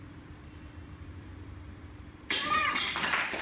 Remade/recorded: remade